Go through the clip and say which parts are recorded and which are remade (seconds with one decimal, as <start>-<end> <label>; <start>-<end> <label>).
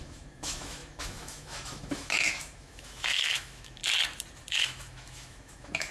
0.0-3.8 remade; 3.8-4.5 recorded; 4.5-5.9 remade